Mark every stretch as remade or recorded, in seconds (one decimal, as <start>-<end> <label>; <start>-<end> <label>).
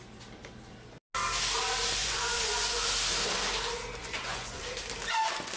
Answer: 0.0-2.0 recorded; 2.0-2.8 remade; 2.8-4.0 recorded; 4.0-4.6 remade; 4.6-5.6 recorded